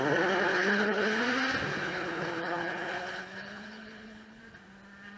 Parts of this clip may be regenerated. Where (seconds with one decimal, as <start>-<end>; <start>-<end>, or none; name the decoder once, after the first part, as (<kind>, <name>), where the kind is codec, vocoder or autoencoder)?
0.5-1.2 (codec, HILCodec); 1.7-4.4